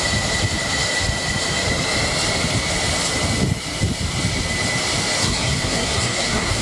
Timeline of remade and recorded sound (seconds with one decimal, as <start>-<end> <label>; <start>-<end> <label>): 0.0-5.2 recorded; 5.2-6.6 remade